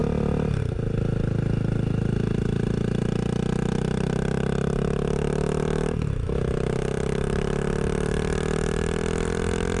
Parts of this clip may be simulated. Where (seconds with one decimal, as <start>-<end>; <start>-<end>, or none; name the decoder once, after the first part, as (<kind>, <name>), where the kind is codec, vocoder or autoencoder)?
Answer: none

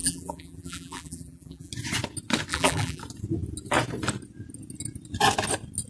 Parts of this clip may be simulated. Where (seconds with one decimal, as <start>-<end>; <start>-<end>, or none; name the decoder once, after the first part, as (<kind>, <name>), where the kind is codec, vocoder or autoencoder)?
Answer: 0.0-1.7 (vocoder, BigVGAN v2); 2.5-3.0

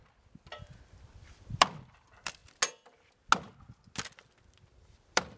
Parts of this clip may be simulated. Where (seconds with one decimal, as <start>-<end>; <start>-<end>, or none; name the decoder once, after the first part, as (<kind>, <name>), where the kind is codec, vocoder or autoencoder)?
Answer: 0.6-2.4 (vocoder, BigVGAN v2); 5.0-5.4

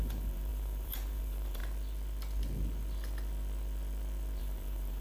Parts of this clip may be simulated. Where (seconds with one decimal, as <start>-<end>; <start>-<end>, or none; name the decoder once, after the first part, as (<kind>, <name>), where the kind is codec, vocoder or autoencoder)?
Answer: 0.0-1.6 (vocoder, BigVGAN v2); 4.4-5.0

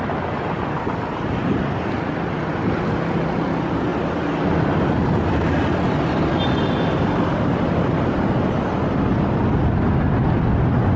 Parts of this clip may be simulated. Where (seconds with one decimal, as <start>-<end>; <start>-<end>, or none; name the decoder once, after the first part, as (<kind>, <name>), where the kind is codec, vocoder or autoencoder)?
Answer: none

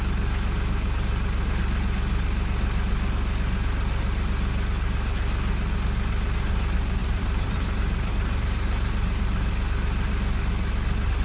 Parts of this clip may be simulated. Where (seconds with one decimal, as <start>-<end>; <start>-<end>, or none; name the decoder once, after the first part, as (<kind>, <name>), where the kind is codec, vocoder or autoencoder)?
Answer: 7.0-9.5 (vocoder, BigVGAN v2)